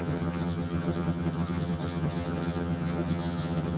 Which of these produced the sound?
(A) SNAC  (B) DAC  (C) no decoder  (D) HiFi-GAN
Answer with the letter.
D